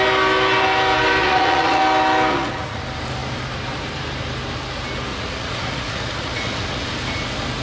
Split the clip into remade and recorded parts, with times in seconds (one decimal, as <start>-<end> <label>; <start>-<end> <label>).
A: 0.0-1.2 recorded; 1.2-1.8 remade; 1.8-2.3 recorded; 2.3-2.8 remade; 2.8-5.1 recorded; 5.1-6.9 remade; 6.9-7.6 recorded